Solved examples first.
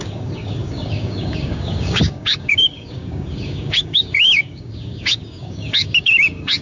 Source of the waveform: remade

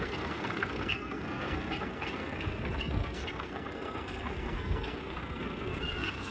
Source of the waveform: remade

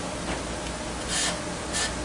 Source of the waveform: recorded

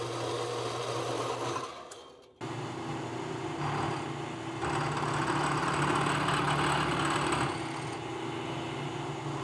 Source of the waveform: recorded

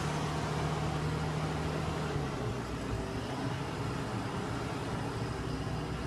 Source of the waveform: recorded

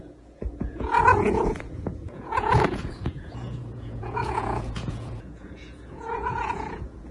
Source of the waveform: remade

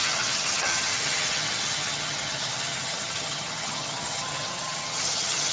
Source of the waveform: remade